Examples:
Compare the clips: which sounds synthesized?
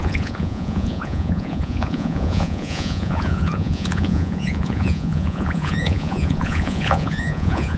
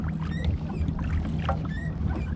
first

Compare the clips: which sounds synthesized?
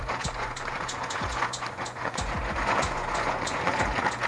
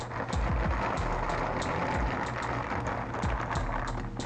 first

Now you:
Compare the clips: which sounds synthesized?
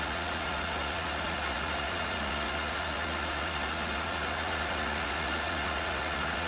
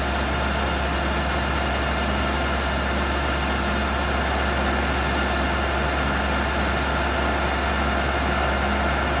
first